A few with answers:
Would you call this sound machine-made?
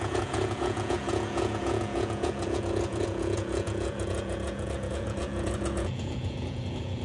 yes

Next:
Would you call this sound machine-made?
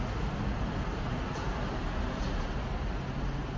no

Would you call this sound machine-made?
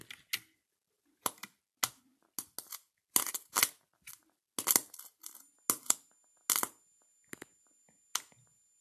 no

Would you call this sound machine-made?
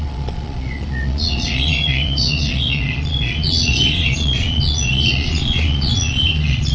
yes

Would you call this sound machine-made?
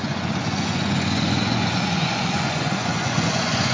yes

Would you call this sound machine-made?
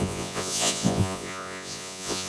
yes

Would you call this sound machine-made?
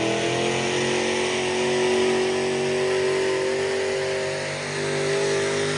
no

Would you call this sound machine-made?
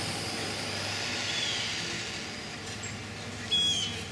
no